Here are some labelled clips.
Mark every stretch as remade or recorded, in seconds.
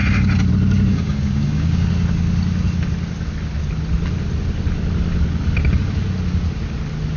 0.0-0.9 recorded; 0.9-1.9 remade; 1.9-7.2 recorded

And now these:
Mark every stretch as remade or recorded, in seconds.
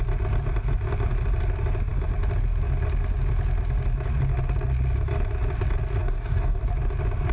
0.0-6.0 recorded; 6.0-6.6 remade; 6.6-7.3 recorded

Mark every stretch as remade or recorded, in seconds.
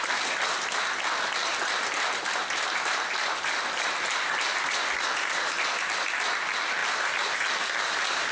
0.0-8.3 recorded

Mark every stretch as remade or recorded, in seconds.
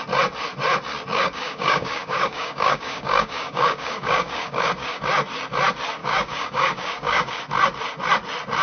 0.0-1.1 recorded; 1.1-5.0 remade; 5.0-6.0 recorded; 6.0-7.4 remade; 7.4-8.6 recorded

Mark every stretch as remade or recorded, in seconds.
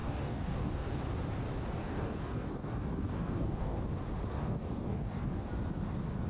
0.0-1.0 remade; 1.0-1.8 recorded; 1.8-3.8 remade; 3.8-4.3 recorded; 4.3-5.5 remade; 5.5-6.3 recorded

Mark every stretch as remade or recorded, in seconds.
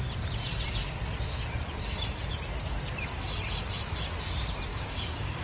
0.0-4.7 recorded; 4.7-5.4 remade